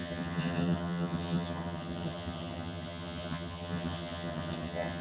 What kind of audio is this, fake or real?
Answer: fake